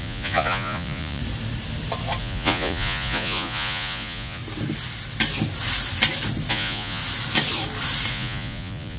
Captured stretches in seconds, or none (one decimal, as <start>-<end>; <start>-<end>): 1.2-2.2; 4.4-6.5; 7.0-8.1